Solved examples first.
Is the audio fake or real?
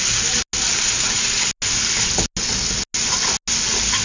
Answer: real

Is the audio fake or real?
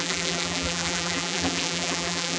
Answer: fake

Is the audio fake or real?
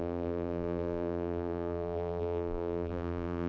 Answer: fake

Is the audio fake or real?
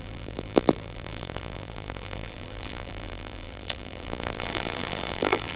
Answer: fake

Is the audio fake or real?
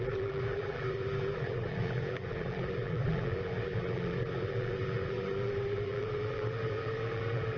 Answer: fake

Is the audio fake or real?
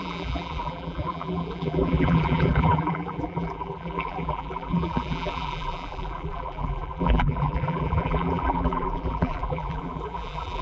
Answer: fake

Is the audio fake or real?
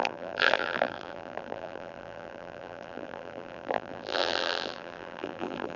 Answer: fake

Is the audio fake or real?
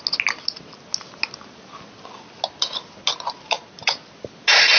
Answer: real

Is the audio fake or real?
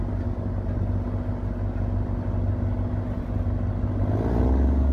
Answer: real